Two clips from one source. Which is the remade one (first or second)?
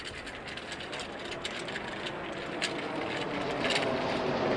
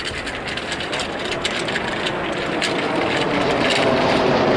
second